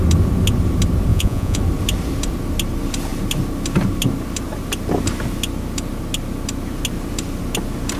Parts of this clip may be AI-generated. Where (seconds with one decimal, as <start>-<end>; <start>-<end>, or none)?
1.1-1.6